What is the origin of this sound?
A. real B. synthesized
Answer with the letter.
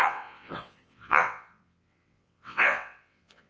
B